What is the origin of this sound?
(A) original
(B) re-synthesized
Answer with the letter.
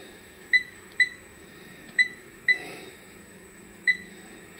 B